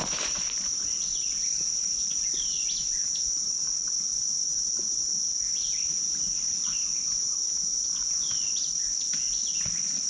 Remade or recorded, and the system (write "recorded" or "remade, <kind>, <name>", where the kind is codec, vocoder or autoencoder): recorded